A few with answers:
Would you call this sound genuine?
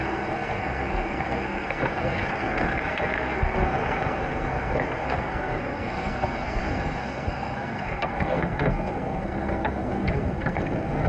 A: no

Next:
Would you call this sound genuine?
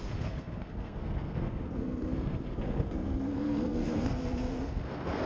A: no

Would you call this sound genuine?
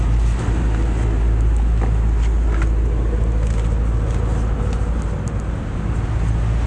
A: yes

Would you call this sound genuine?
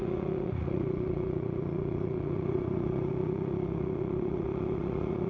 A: no